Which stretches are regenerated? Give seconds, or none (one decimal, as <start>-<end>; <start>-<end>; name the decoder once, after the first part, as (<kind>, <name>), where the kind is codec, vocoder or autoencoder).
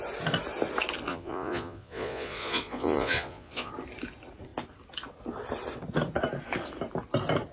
1.1-3.7 (vocoder, Vocos)